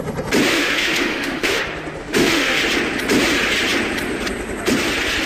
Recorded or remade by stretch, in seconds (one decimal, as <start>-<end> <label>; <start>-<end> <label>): 0.0-0.5 recorded; 0.5-1.6 remade; 1.6-2.0 recorded; 2.0-2.6 remade; 2.6-5.3 recorded